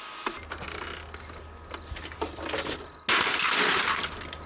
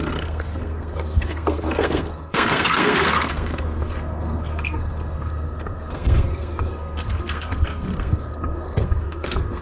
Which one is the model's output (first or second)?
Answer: second